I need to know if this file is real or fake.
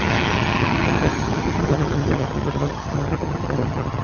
fake